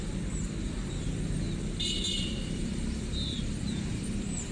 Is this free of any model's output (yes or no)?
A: no